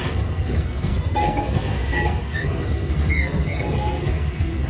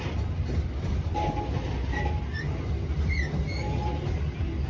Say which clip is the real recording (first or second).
second